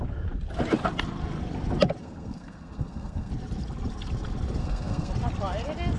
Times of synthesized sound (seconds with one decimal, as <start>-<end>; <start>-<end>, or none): 2.0-3.3; 4.6-5.1

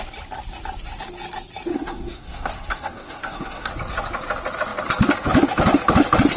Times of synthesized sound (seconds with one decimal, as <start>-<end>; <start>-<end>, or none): 1.7-3.7

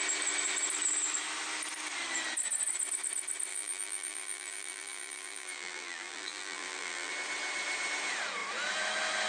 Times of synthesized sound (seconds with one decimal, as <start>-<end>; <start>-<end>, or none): 3.5-7.1

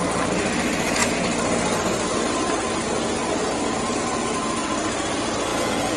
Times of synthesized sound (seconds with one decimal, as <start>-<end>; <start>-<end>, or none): 5.5-6.0

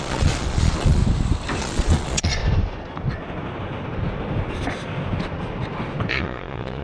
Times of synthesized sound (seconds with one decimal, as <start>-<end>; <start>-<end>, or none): 0.0-1.0; 1.6-2.4; 6.1-6.8

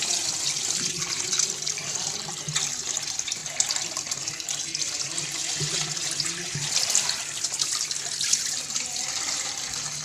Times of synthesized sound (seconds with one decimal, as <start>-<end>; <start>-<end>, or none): 0.0-3.4; 3.9-5.4; 6.7-10.0

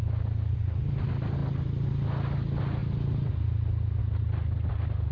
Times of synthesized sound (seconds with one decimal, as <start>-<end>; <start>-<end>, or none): none